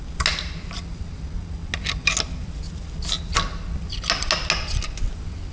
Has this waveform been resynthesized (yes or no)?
no